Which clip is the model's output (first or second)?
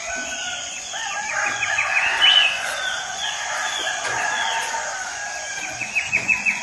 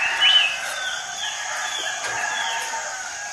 first